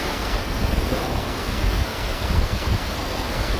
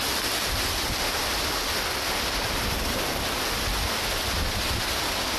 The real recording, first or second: second